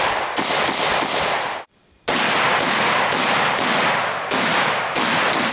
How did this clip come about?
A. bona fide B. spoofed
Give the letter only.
A